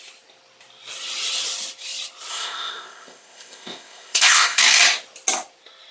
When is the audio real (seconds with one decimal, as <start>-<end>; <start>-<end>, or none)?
0.0-2.3; 4.6-5.9